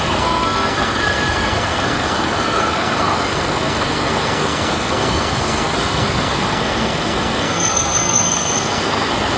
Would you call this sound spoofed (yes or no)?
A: yes